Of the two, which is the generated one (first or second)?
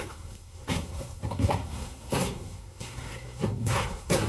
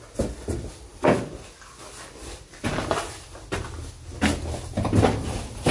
first